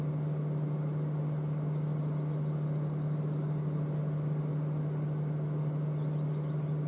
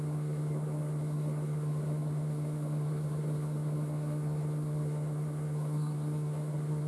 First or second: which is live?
first